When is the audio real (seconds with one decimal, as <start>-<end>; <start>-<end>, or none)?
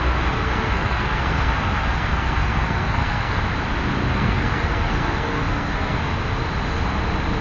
3.4-4.1; 6.2-7.4